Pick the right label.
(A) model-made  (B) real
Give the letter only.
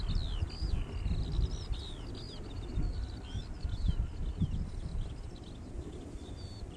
B